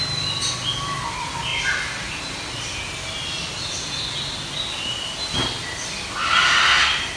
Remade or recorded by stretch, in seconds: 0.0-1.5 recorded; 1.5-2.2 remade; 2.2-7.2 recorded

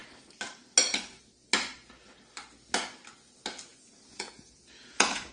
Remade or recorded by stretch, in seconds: 0.0-3.7 recorded; 3.7-5.3 remade

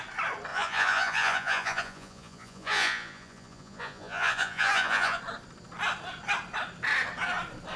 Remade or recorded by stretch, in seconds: 0.0-0.5 recorded; 0.5-5.2 remade; 5.2-7.8 recorded

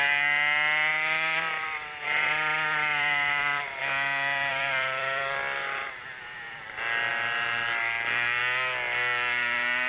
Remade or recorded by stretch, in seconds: 0.0-0.9 recorded; 0.9-3.8 remade; 3.8-4.5 recorded; 4.5-6.6 remade; 6.6-9.9 recorded

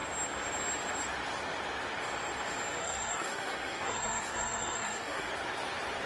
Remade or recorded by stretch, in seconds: 0.0-2.8 recorded; 2.8-5.3 remade; 5.3-6.1 recorded

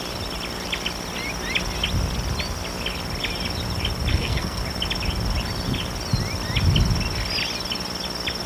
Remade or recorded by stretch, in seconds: 0.0-4.1 recorded; 4.1-4.6 remade; 4.6-8.5 recorded